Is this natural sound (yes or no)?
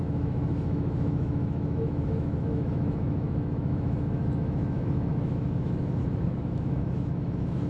no